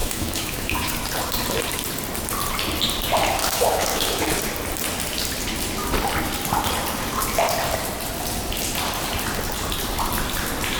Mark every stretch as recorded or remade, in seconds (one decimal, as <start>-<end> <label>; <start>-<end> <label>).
0.0-0.9 remade; 0.9-3.4 recorded; 3.4-4.3 remade; 4.3-10.8 recorded